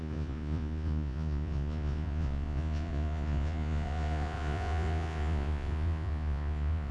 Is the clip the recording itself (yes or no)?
no